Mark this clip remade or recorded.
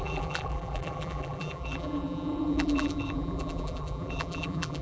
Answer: remade